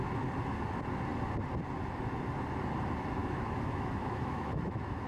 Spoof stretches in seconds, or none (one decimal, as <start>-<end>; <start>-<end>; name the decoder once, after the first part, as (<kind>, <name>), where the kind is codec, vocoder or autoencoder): 3.2-5.1 (autoencoder, DAC-VAE)